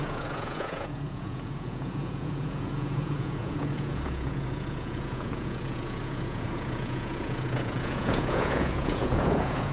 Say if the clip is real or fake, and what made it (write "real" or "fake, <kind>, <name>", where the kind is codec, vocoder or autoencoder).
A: fake, vocoder, Vocos